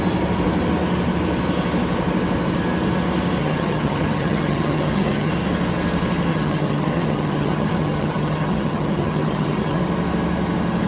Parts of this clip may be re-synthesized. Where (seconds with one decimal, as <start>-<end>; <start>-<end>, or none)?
3.4-5.3; 6.3-9.8